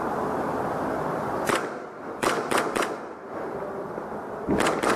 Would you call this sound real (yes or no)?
no